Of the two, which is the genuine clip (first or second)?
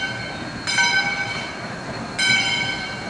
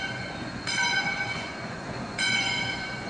first